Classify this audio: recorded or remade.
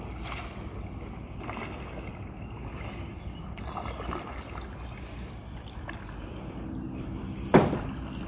recorded